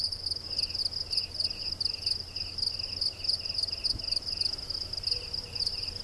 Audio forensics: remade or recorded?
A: recorded